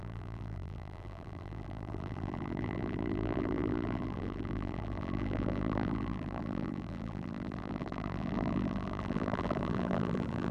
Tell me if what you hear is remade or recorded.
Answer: remade